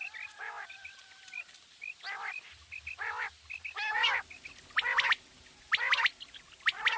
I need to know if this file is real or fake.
real